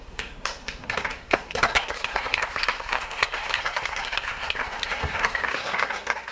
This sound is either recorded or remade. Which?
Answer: remade